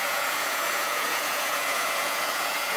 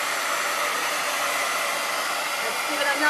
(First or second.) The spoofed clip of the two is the first